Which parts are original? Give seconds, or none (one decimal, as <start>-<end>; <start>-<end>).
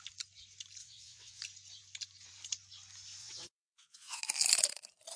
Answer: 0.0-0.8; 1.4-3.2; 4.2-5.2